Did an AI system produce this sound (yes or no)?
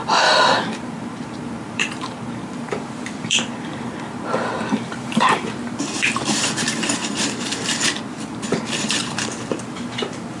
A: yes